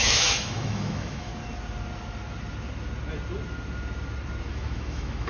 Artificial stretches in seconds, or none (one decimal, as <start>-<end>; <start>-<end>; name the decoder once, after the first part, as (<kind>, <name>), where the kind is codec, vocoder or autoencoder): 0.0-1.3 (autoencoder, DAC-VAE); 4.5-5.3